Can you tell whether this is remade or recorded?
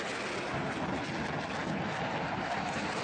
recorded